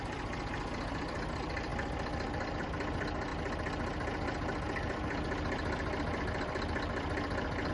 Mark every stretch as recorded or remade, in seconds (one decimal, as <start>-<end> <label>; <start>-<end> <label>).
0.0-7.7 remade